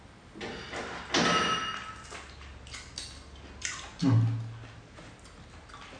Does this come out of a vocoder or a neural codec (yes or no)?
no